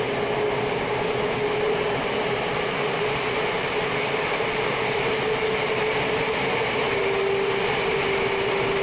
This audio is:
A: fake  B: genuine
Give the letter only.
B